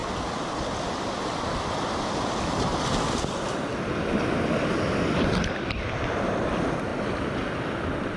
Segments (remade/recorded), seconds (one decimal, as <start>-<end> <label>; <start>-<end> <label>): 0.0-0.5 recorded; 0.5-2.7 remade; 2.7-6.1 recorded; 6.1-8.2 remade